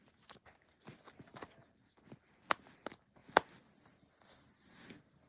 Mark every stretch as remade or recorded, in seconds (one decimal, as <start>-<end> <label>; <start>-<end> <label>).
0.0-5.3 recorded